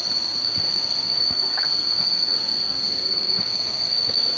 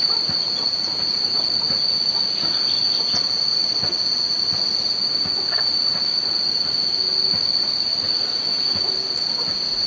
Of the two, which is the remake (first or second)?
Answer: first